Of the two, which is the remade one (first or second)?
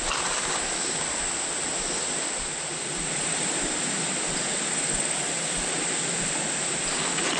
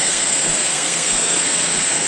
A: second